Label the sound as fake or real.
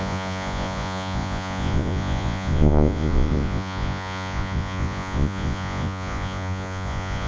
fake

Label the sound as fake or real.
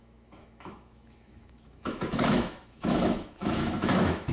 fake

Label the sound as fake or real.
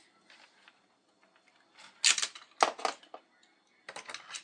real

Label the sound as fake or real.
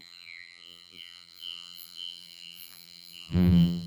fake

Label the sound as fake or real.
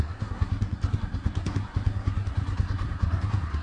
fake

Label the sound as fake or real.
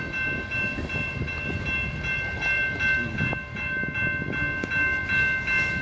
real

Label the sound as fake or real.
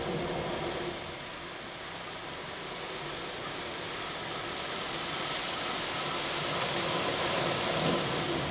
real